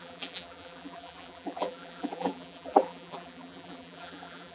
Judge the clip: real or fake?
fake